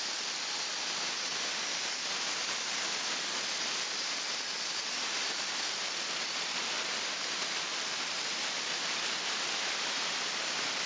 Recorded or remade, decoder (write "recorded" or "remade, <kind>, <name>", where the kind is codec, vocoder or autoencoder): remade, vocoder, BigVGAN v2